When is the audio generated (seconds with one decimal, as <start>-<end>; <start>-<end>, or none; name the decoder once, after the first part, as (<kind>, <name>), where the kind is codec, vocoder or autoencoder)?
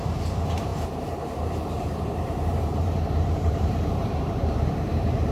0.0-5.3 (vocoder, BigVGAN v2)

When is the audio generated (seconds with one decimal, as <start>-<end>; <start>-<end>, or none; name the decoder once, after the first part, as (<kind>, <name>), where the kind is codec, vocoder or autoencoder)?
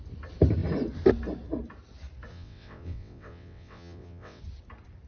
2.3-4.4 (vocoder, WaveNeXt)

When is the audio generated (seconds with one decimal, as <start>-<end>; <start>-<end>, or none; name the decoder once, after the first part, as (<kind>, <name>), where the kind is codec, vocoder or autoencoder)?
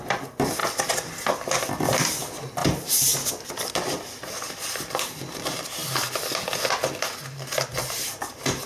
none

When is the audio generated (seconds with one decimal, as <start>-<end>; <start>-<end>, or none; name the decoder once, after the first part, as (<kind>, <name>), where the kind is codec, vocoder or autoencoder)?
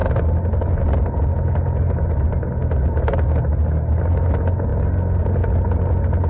none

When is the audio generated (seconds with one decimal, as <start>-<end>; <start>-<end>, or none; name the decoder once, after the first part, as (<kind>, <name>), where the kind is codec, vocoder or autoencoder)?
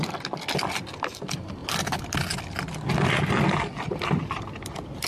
none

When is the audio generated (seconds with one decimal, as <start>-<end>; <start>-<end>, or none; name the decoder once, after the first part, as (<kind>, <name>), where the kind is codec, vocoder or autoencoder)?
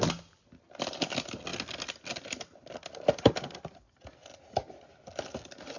none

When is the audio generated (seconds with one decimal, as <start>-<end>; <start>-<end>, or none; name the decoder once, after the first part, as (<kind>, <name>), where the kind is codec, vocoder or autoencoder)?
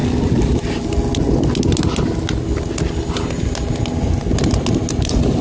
none